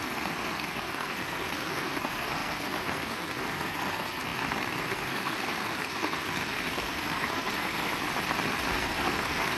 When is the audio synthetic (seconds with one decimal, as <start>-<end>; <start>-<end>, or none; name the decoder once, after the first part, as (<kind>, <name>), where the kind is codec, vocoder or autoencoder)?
0.0-7.9 (codec, SNAC); 8.7-9.6